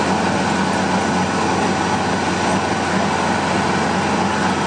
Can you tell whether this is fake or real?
real